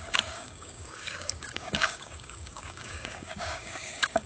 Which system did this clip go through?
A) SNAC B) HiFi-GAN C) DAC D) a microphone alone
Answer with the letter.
C